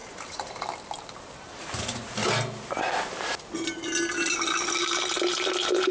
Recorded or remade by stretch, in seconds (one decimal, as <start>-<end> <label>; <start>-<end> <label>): 0.0-0.5 remade; 0.5-5.9 recorded